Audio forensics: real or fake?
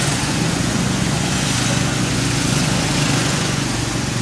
fake